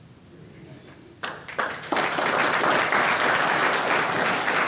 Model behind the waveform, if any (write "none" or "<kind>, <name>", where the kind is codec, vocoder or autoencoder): none